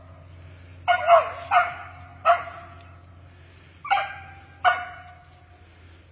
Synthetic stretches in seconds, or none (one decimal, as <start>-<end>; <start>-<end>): none